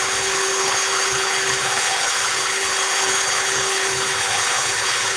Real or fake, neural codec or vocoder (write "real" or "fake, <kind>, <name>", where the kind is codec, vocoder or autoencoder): fake, codec, HILCodec